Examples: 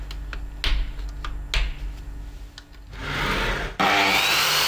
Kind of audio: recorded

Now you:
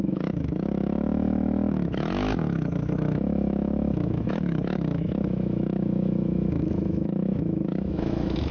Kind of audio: remade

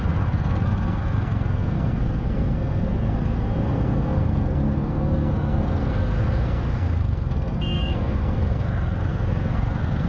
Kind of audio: remade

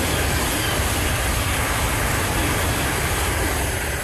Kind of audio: recorded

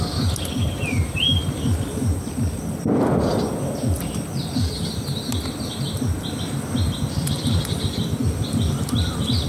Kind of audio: recorded